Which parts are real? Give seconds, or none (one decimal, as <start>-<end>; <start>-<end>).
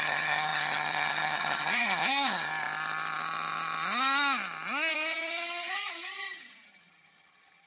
2.5-4.9